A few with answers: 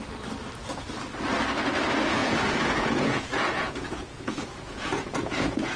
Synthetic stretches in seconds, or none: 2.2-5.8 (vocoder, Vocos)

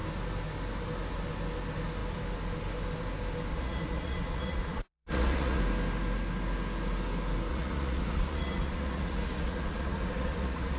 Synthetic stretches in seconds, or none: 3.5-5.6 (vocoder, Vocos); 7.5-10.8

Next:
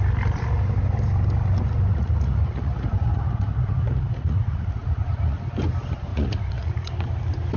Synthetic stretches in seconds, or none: 1.9-5.4 (vocoder, Vocos); 6.1-6.9

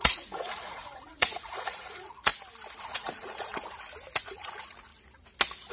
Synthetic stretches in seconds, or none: 0.0-2.3 (vocoder, Vocos); 2.8-3.5; 4.2-4.9